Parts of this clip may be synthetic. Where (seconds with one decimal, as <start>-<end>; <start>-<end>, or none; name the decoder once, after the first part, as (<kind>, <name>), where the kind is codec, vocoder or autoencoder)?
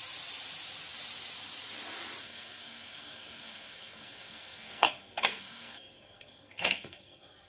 2.2-7.5 (codec, SNAC)